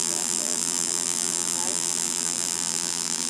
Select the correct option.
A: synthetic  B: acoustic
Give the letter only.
A